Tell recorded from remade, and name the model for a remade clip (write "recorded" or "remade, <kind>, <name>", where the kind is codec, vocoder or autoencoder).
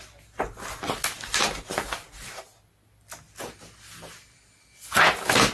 recorded